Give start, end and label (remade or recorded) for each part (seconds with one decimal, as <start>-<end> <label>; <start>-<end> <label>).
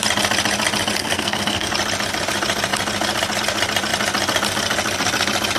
0.0-1.0 recorded; 1.0-1.7 remade; 1.7-5.6 recorded